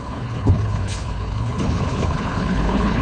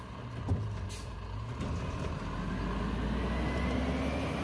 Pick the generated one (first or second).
first